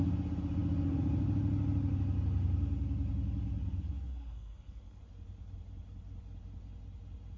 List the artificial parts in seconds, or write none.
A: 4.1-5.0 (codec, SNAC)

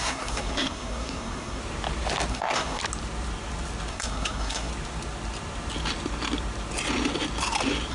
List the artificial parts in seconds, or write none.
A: 0.0-1.6 (codec, SNAC); 2.3-2.8; 3.9-4.7

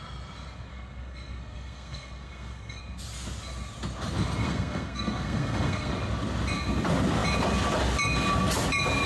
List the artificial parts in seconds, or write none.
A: 0.7-2.8 (codec, SNAC); 4.4-5.9

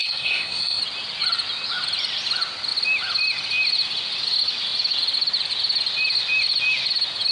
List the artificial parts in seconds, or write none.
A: 0.0-0.8 (codec, SNAC)

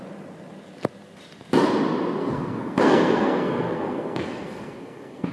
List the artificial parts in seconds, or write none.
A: 2.2-5.3 (codec, SNAC)

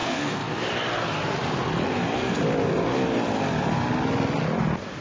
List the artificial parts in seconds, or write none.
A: 0.0-0.6 (codec, SNAC)

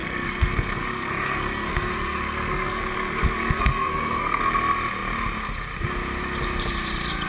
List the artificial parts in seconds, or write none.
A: 0.0-4.4 (codec, SNAC)